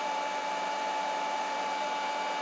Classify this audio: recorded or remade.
recorded